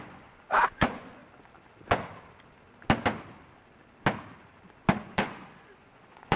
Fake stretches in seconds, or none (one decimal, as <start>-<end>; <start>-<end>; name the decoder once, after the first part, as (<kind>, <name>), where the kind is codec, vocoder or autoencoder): 0.0-1.2 (vocoder, Vocos); 5.0-6.4